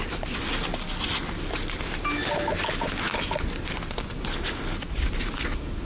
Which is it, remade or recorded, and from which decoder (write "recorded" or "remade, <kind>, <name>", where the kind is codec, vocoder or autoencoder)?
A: recorded